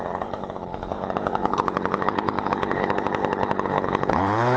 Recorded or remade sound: remade